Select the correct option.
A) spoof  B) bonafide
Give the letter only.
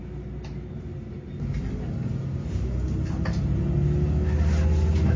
B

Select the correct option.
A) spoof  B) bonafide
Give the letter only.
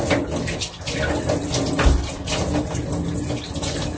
B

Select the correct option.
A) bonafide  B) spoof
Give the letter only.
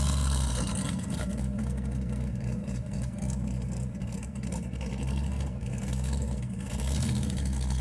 B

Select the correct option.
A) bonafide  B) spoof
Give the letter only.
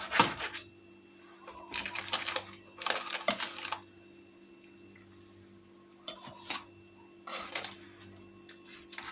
A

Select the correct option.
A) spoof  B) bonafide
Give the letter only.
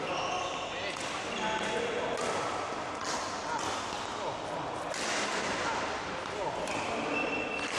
B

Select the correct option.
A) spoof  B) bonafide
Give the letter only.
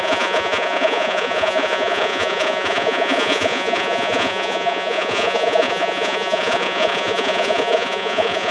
A